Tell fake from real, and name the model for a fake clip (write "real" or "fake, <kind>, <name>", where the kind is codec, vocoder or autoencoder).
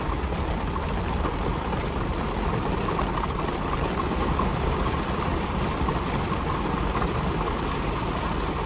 fake, vocoder, BigVGAN v2